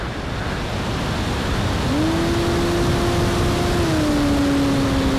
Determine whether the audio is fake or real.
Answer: real